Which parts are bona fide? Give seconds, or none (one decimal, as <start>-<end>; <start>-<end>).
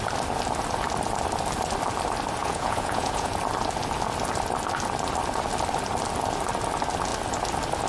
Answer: 0.0-2.4; 3.3-7.9